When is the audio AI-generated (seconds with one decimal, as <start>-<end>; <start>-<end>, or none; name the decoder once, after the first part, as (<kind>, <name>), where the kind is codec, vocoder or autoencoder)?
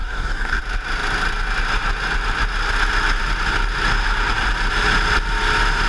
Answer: 0.0-0.6 (codec, DAC)